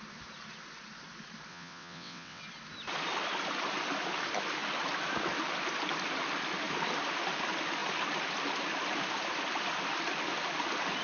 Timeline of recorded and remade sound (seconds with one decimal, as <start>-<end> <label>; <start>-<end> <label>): 0.0-1.5 recorded; 1.5-2.4 remade; 2.4-11.0 recorded